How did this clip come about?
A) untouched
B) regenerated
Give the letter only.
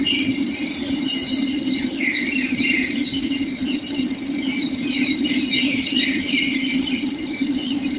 B